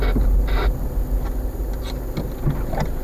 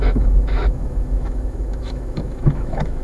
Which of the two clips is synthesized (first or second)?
second